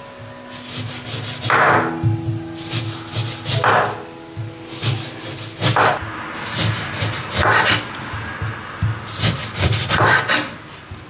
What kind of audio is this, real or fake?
real